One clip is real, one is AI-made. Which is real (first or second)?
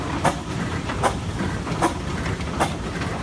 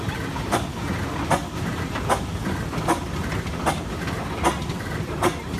second